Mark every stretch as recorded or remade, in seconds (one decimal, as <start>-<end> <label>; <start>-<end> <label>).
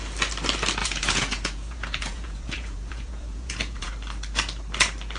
0.0-0.8 recorded; 0.8-3.9 remade; 3.9-5.2 recorded